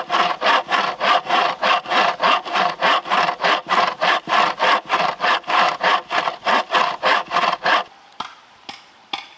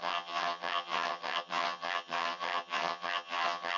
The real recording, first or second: first